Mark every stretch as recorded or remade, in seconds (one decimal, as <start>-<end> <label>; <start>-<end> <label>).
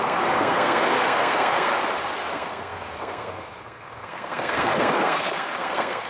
0.0-1.7 remade; 1.7-2.3 recorded; 2.3-6.1 remade